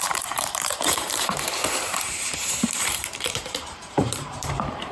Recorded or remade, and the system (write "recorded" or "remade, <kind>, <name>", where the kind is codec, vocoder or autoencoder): remade, vocoder, BigVGAN v2